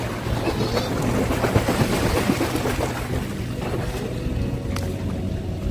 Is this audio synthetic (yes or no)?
no